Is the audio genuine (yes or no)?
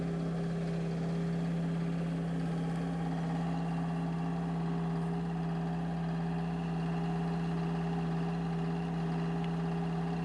yes